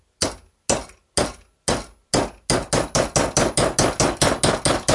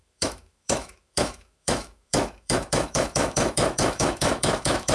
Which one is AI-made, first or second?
second